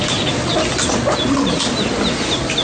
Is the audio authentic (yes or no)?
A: yes